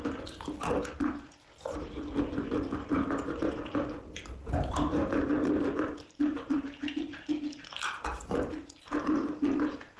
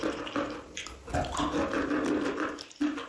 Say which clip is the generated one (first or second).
first